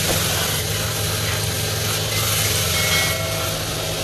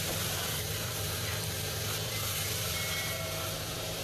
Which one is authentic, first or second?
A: first